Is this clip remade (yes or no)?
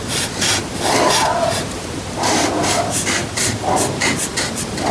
yes